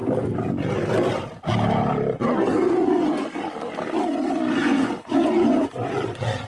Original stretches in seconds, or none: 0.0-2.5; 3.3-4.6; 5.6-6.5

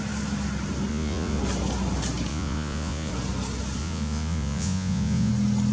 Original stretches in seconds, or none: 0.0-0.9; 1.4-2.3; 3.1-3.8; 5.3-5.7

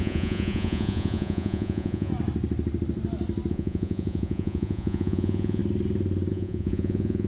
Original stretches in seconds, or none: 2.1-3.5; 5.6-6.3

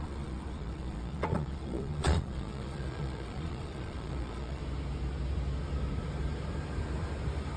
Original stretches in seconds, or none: 4.6-7.6

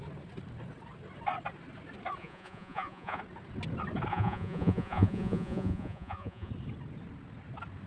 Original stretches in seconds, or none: 0.0-2.2; 3.2-4.1; 6.5-7.9

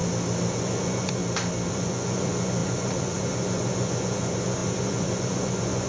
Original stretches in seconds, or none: 0.0-0.5; 1.2-1.7

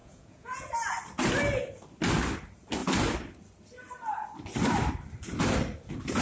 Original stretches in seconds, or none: 0.7-6.2

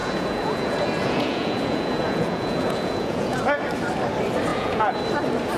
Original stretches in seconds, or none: 3.4-4.5; 5.0-5.6